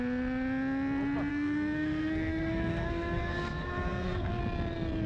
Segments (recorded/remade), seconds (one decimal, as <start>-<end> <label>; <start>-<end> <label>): 0.0-1.3 recorded; 1.3-4.4 remade; 4.4-5.1 recorded